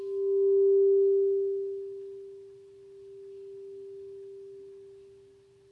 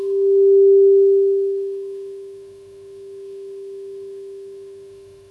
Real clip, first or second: first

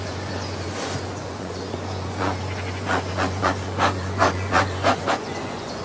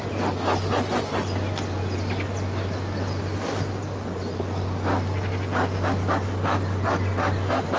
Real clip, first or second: second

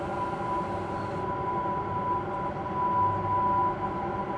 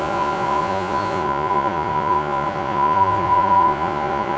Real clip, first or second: first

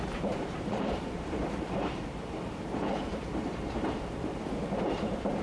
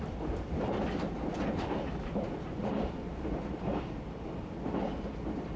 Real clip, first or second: second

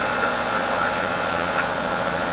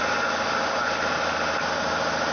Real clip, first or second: second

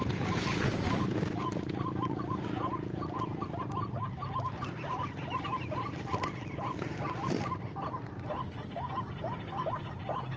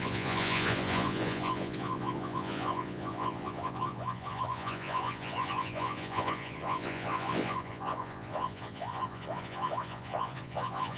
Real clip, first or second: first